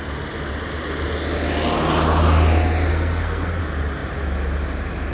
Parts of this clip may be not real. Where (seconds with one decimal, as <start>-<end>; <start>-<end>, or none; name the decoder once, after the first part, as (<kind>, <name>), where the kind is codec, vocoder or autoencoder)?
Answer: 2.9-3.6 (codec, SNAC)